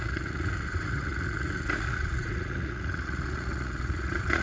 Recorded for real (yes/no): no